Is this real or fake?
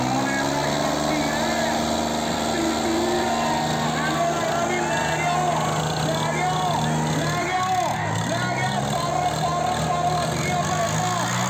real